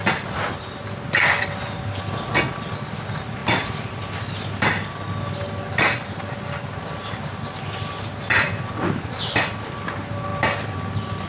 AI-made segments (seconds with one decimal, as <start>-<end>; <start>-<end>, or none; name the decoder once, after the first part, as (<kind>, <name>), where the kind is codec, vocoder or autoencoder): none